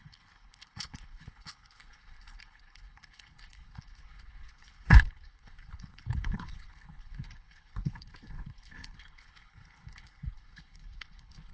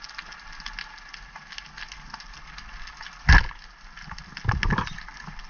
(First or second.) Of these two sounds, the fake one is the first